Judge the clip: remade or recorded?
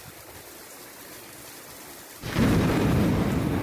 remade